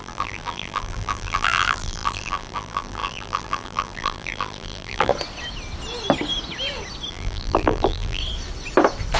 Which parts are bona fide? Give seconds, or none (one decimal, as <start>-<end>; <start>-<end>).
5.1-7.1; 8.2-9.2